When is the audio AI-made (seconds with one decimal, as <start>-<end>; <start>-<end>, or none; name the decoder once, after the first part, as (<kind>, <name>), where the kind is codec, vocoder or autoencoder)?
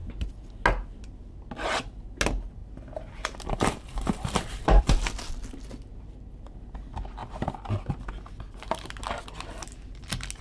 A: 2.6-4.8 (vocoder, BigVGAN v2)